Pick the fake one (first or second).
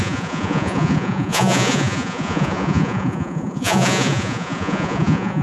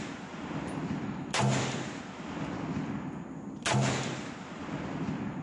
first